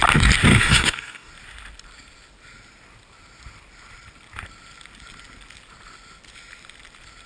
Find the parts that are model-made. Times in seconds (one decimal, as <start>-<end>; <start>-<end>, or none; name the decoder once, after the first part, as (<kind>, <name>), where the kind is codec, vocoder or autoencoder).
0.5-1.3 (codec, DAC)